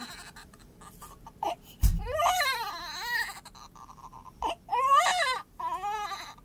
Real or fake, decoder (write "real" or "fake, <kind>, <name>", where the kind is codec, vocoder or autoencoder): real